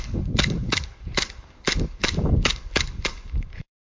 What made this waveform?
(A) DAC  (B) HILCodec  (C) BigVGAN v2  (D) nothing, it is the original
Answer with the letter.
A